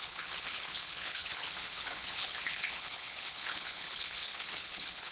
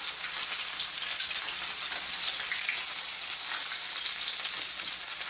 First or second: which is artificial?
first